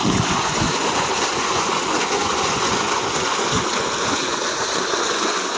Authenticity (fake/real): fake